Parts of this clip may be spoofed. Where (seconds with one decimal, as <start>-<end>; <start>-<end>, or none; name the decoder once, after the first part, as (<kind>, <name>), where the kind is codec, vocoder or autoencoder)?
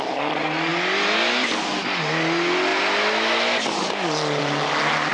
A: none